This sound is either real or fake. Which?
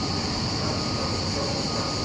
real